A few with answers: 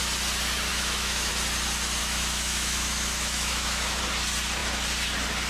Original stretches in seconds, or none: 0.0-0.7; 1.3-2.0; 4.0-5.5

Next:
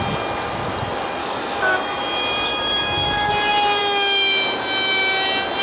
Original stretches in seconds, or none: 0.0-1.2; 2.0-2.5; 3.3-5.6

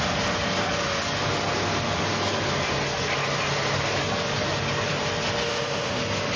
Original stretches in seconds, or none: 0.0-5.4; 6.0-6.4

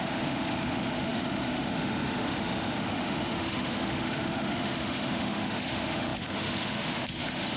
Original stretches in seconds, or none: none

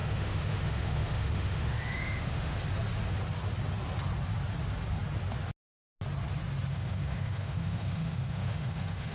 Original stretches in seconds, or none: 2.6-6.7

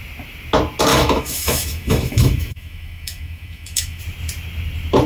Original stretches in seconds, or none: 0.0-0.9; 4.0-5.1